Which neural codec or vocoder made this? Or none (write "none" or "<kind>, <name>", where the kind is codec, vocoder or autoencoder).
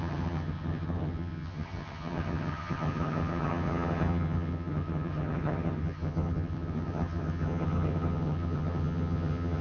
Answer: vocoder, HiFi-GAN